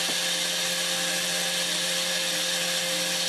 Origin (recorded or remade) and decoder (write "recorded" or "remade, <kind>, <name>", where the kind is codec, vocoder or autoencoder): recorded